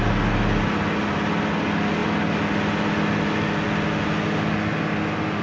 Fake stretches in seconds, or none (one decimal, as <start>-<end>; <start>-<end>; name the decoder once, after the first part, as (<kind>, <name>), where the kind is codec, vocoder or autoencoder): none